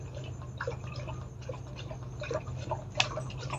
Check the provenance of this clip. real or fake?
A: real